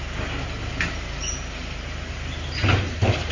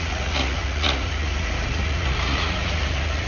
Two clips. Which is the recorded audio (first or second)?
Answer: first